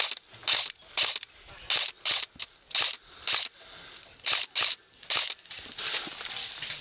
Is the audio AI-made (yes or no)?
no